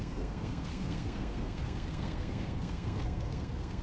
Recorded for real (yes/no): no